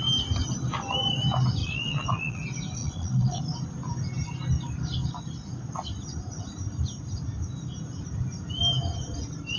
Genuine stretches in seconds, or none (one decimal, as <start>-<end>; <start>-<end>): 0.0-1.6; 2.4-2.8; 3.4-9.6